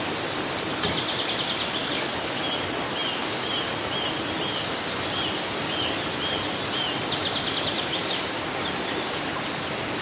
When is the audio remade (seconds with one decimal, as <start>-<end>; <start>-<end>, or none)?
1.8-2.4